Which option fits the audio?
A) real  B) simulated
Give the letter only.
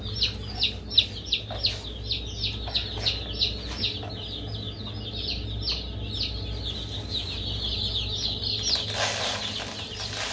A